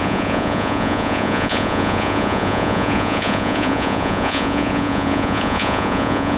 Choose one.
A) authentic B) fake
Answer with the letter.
B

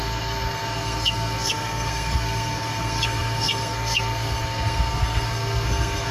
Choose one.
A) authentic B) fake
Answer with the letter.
B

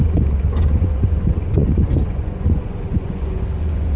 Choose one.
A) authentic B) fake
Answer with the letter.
B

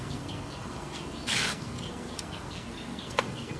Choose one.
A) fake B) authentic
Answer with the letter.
A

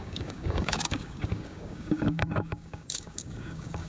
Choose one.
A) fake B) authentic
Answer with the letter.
A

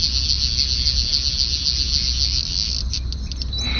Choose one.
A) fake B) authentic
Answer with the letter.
B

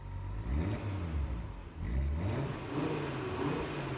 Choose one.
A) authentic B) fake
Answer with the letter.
A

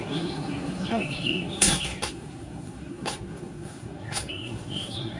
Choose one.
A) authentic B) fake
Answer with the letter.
B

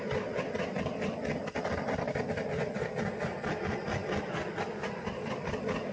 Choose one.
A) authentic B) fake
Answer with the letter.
A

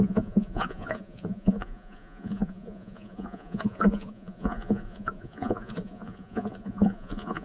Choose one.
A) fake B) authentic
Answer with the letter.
A